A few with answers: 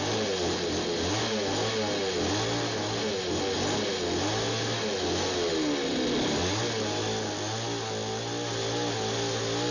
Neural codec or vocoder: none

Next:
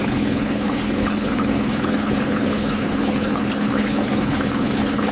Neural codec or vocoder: codec, HILCodec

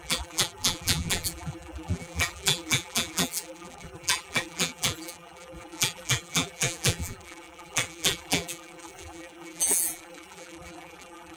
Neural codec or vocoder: vocoder, BigVGAN v2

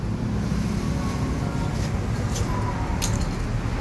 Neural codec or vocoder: none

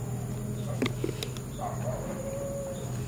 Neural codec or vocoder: none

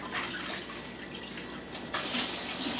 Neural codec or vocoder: none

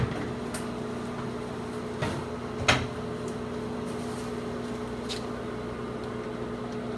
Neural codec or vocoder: none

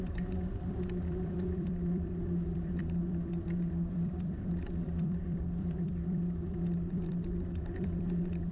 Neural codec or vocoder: vocoder, BigVGAN v2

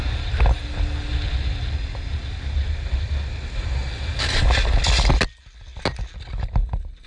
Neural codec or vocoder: none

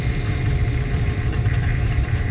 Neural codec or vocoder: vocoder, BigVGAN v2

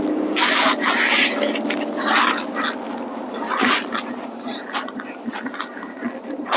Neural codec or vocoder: none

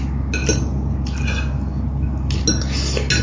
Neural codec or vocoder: none